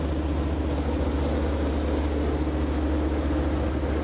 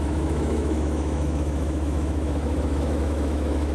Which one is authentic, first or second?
first